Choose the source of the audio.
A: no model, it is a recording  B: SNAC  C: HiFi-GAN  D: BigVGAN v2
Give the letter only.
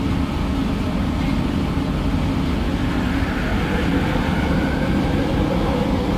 A